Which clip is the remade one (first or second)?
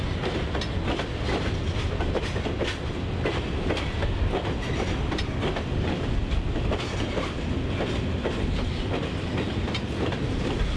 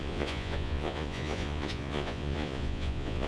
second